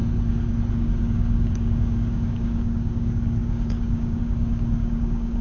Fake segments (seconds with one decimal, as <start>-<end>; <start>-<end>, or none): 0.7-5.4

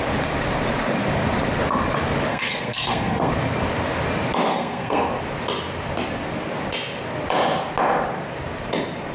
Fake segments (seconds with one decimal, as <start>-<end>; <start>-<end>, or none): 2.3-3.3; 4.5-5.1

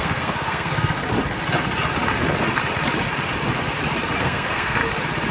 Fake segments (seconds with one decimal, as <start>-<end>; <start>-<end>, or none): 0.0-1.0; 4.2-4.8

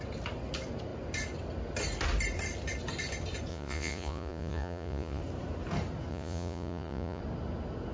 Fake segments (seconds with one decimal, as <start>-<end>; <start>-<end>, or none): 3.5-5.2; 6.1-7.2

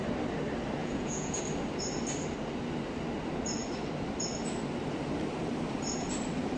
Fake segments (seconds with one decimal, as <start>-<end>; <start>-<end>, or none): 0.8-1.4

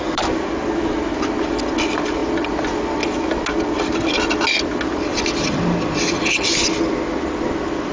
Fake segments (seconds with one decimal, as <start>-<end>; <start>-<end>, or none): none

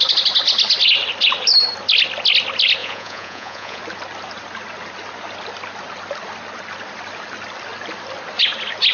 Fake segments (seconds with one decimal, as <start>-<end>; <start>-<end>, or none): 2.8-3.8

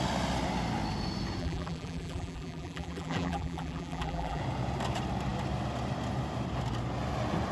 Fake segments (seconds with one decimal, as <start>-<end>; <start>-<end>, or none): 1.4-4.4